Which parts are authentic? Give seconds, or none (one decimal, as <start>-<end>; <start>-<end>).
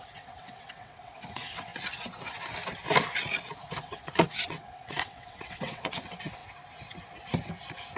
1.7-3.8; 6.4-8.0